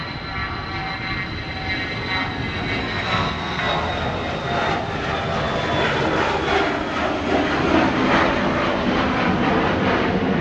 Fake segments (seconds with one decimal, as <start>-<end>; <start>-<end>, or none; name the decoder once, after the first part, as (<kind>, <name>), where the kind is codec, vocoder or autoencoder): 2.8-3.6 (codec, SNAC)